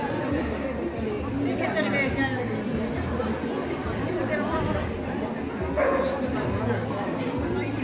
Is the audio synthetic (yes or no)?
no